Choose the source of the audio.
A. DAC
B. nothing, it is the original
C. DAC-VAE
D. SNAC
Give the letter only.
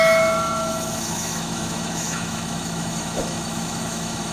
C